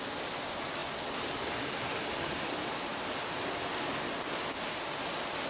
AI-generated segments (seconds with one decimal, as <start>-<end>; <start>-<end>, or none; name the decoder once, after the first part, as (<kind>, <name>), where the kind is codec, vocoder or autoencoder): none